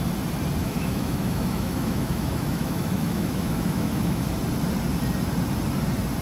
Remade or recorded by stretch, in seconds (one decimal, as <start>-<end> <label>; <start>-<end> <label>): 0.0-0.6 recorded; 0.6-4.3 remade; 4.3-6.2 recorded